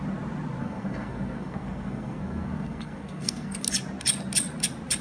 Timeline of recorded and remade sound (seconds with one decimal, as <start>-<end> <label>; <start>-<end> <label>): 0.0-0.6 recorded; 0.6-3.6 remade; 3.6-5.0 recorded

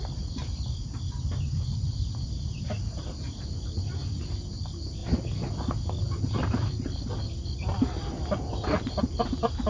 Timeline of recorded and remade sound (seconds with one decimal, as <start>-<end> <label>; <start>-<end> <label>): 0.0-9.7 recorded

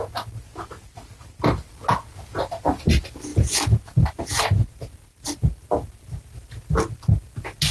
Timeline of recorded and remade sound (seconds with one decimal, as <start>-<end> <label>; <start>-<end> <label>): 0.0-7.7 recorded

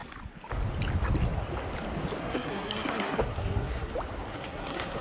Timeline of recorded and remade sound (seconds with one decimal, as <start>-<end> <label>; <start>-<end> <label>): 0.0-2.2 recorded; 2.2-3.9 remade; 3.9-4.3 recorded; 4.3-5.0 remade

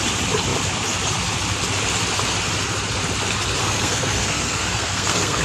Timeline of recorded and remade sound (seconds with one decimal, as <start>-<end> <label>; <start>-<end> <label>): 0.0-3.6 recorded; 3.6-5.4 remade